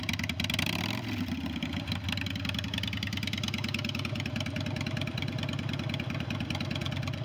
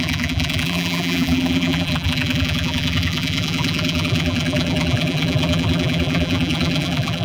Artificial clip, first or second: second